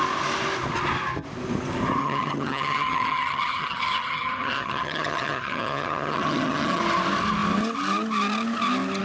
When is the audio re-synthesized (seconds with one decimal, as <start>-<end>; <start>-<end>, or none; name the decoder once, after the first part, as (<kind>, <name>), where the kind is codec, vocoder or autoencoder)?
2.0-6.8 (vocoder, HiFi-GAN)